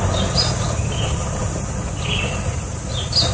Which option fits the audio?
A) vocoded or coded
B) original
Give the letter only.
B